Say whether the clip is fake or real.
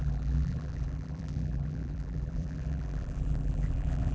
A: fake